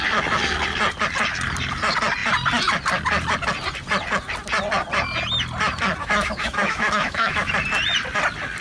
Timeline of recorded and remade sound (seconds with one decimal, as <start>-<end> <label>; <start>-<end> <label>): 0.0-6.0 recorded; 6.0-7.5 remade; 7.5-8.6 recorded